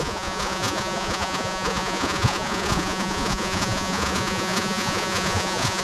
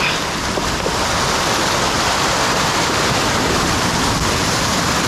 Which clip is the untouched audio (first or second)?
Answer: second